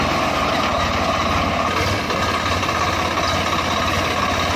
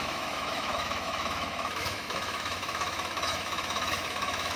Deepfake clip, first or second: second